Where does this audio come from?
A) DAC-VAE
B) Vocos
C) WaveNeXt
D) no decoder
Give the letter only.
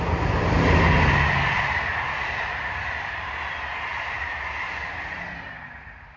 D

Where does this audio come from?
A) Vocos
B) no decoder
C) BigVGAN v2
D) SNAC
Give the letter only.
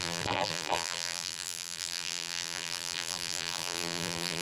C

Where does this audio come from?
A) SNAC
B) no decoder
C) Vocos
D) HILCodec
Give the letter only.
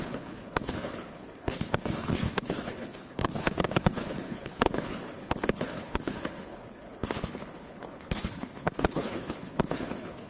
D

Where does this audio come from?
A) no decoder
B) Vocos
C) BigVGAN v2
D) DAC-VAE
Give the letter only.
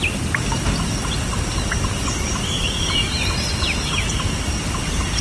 A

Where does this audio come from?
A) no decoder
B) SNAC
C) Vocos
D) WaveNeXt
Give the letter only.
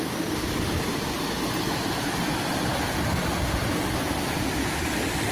A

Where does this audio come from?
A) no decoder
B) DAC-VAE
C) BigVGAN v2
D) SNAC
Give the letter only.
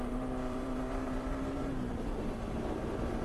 C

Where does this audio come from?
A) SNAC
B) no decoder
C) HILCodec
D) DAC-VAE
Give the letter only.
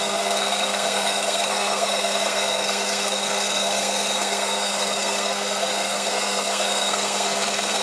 A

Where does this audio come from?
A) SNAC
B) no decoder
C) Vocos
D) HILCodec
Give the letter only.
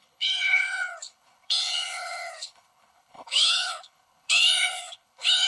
D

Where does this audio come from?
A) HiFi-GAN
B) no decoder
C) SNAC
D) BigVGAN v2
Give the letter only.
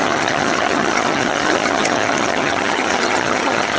A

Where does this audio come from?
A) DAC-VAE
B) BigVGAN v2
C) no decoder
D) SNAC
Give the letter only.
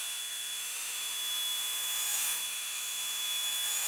A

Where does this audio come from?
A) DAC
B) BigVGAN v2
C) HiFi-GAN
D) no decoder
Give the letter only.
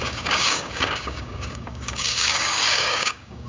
A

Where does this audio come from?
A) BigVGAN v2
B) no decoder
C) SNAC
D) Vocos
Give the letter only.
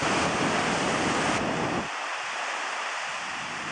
B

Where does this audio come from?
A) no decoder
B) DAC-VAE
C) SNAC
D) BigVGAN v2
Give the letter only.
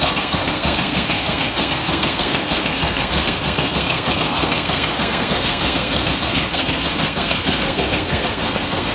C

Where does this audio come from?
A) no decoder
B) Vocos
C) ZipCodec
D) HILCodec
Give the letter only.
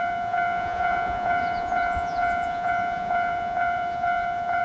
B